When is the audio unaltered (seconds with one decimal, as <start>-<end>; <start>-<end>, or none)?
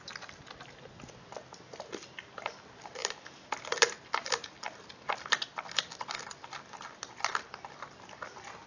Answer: 0.0-8.7